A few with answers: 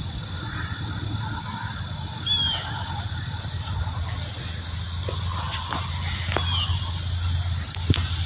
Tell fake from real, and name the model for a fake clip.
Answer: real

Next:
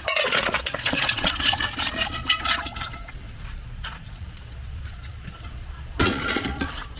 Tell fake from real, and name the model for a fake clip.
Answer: fake, vocoder, Vocos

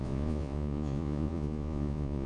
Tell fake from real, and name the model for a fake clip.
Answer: fake, vocoder, Vocos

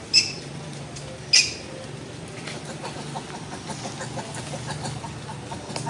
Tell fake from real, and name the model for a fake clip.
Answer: real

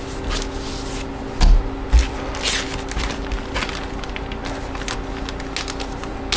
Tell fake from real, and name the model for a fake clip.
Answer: real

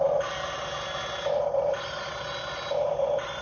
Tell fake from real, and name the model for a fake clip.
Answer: real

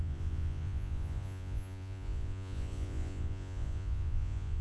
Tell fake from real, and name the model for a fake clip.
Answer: fake, vocoder, Vocos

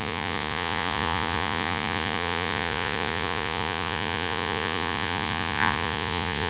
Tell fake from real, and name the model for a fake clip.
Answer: fake, vocoder, Vocos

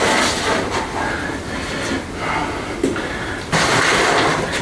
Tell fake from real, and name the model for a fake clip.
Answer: real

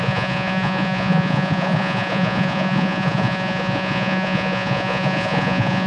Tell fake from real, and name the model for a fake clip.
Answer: fake, vocoder, Vocos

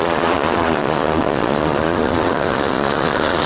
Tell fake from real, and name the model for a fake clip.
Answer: fake, vocoder, Vocos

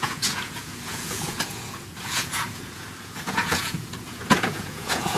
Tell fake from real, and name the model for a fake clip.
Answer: fake, vocoder, Vocos